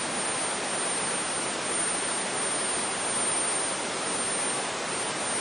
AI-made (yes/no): no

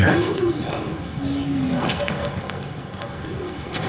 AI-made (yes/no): yes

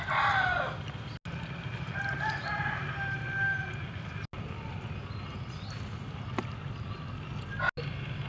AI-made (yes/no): no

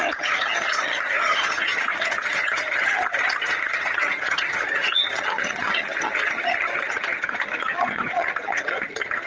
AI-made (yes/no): yes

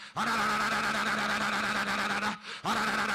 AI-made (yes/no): no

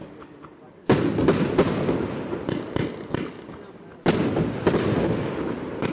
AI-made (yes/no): no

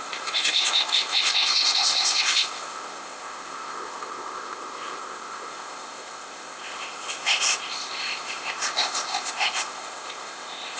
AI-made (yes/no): yes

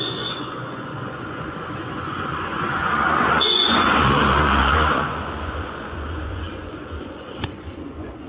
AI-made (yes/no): yes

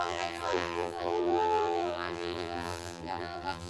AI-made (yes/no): yes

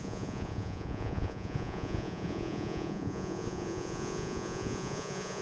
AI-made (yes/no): yes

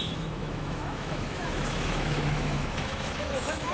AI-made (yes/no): yes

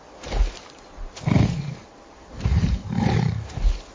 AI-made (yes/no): yes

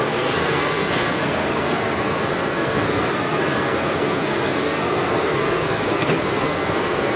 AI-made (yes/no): yes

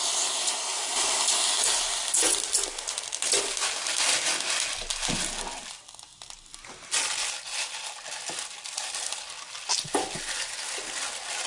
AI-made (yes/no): no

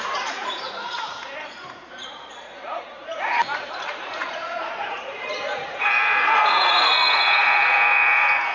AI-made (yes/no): yes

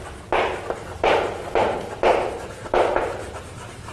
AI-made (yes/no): no